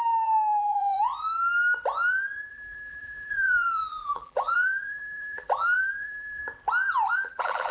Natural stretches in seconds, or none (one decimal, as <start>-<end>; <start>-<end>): 1.1-2.5; 6.4-7.1